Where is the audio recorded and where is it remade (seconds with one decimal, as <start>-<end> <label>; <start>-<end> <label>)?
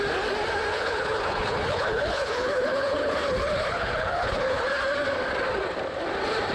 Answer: 0.0-0.7 recorded; 0.7-4.6 remade; 4.6-6.5 recorded